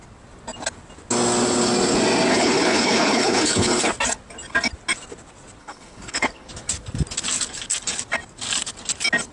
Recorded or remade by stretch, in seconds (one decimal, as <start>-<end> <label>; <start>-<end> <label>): 0.0-2.3 recorded; 2.3-3.9 remade; 3.9-5.6 recorded; 5.6-6.5 remade; 6.5-9.3 recorded